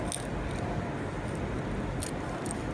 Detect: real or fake real